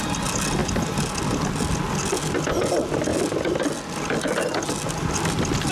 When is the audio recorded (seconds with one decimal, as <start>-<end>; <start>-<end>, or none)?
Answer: 0.0-5.7